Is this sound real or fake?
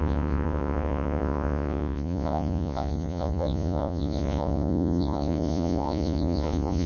fake